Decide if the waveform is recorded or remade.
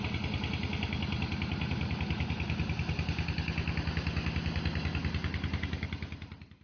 recorded